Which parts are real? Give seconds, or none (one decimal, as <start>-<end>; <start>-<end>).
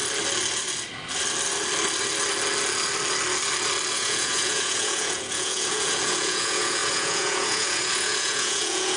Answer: 0.0-3.9